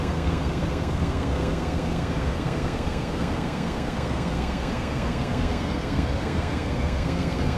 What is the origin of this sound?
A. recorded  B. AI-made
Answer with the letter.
B